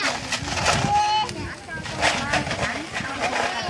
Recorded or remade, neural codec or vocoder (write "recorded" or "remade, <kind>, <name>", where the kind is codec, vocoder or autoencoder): recorded